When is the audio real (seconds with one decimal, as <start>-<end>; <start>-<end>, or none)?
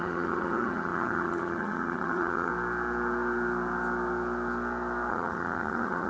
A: 2.5-5.1